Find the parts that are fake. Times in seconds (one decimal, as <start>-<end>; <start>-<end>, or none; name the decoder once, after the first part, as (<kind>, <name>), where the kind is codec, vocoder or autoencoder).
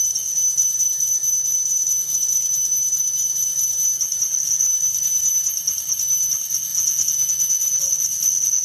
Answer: 6.7-7.8 (vocoder, Vocos)